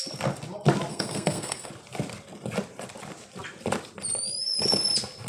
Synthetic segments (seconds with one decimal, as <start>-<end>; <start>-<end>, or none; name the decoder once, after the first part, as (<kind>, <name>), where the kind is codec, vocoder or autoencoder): 0.9-1.7 (codec, SNAC)